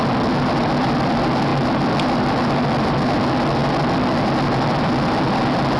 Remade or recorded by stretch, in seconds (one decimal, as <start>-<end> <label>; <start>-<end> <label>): 0.0-5.8 recorded